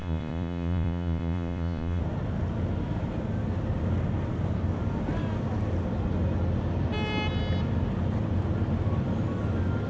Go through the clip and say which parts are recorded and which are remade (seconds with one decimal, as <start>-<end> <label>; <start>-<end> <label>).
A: 0.0-2.0 remade; 2.0-9.9 recorded